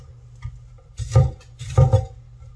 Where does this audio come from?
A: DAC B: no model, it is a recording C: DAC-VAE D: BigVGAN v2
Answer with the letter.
B